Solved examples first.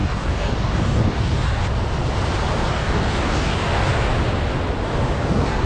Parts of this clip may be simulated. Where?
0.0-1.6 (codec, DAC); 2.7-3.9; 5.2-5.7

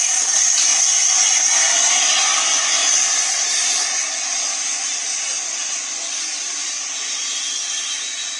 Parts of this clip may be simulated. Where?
none

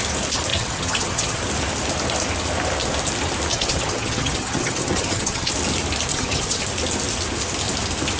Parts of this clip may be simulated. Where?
0.5-1.4 (vocoder, HiFi-GAN); 3.5-5.5; 6.1-6.6

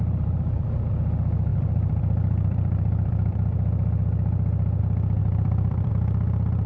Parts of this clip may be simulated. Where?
1.5-4.8 (vocoder, BigVGAN v2); 5.2-5.9

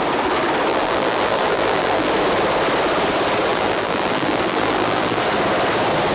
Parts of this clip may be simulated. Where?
0.7-2.1 (vocoder, BigVGAN v2); 3.5-5.2

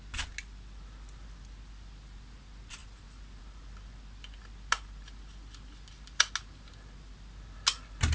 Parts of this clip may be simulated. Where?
none

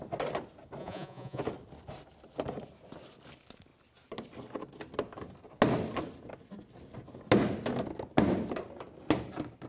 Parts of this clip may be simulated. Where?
0.8-1.4 (vocoder, Vocos)

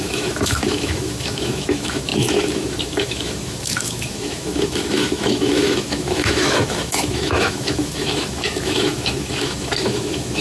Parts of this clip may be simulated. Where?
0.0-10.4 (autoencoder, DAC-VAE)